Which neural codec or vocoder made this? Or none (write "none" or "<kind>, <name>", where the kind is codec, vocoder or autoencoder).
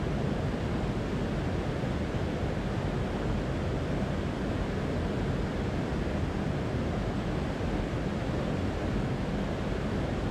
none